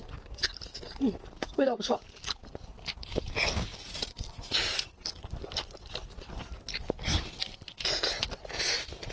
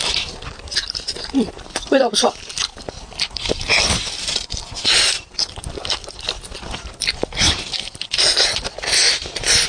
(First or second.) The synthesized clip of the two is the second